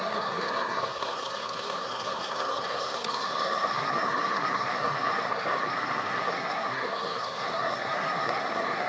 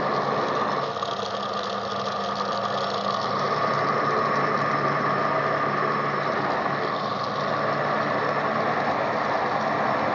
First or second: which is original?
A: second